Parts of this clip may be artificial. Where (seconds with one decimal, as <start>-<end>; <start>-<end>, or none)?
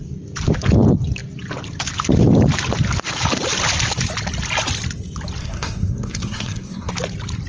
5.4-6.9